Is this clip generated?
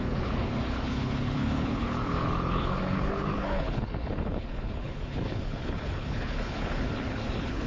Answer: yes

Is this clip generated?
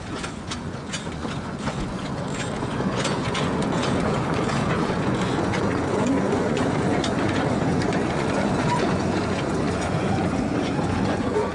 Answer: yes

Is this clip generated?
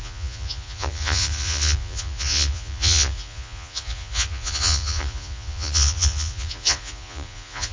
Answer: yes